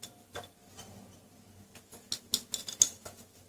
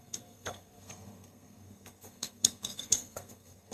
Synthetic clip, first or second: second